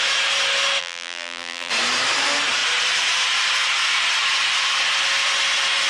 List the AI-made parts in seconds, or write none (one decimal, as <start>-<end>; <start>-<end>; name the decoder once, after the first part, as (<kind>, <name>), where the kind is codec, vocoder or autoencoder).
0.8-1.7 (vocoder, BigVGAN v2)